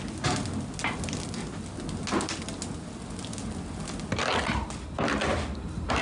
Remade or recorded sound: recorded